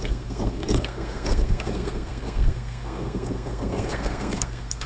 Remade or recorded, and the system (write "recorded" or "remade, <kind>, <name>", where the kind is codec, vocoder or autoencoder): remade, codec, SNAC